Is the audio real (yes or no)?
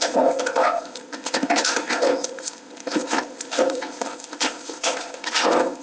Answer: no